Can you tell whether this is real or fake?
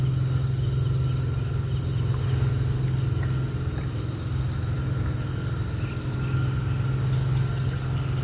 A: real